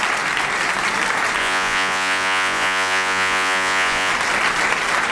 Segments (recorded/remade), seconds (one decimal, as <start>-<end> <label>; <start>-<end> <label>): 0.0-1.4 recorded; 1.4-4.1 remade; 4.1-5.1 recorded